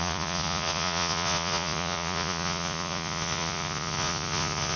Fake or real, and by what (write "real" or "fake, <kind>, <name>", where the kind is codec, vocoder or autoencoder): fake, vocoder, Vocos